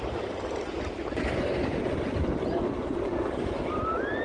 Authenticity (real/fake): real